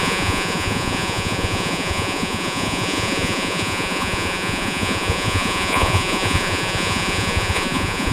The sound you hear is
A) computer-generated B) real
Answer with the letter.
A